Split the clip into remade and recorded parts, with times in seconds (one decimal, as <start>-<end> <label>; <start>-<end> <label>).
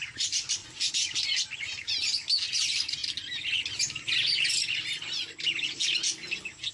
0.0-0.6 remade; 0.6-2.5 recorded; 2.5-3.0 remade; 3.0-6.7 recorded